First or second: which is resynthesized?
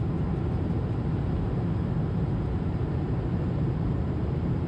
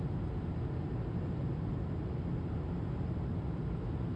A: first